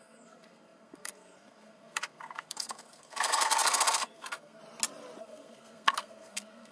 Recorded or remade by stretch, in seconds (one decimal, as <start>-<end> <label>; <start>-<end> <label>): 0.0-4.6 remade; 4.6-5.2 recorded; 5.2-6.7 remade